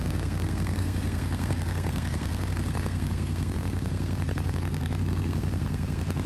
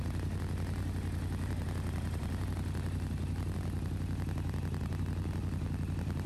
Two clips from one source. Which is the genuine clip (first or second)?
second